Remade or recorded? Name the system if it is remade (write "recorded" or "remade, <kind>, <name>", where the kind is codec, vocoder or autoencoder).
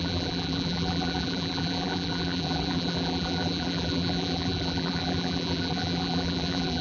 remade, vocoder, BigVGAN v2